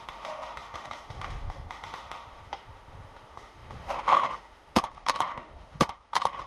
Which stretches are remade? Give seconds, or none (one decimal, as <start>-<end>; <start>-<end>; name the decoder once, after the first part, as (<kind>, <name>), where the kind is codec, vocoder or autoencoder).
0.0-6.5 (autoencoder, DAC-VAE)